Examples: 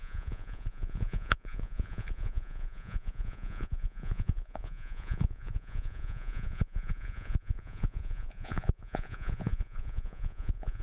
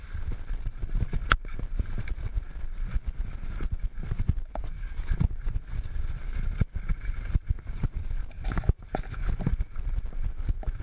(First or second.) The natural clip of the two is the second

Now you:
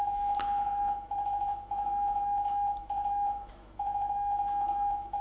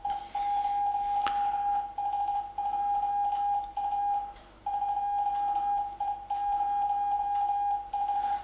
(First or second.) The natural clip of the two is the second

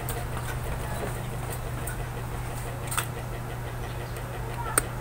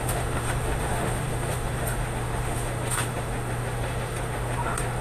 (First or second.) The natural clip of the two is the first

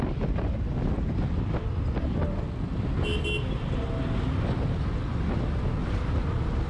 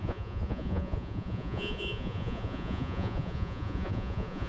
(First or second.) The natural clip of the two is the first